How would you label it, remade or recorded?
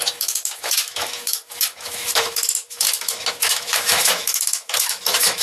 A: remade